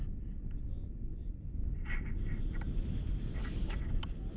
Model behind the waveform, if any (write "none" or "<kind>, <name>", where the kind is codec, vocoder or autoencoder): none